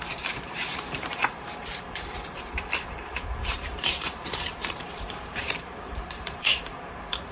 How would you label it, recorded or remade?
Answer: remade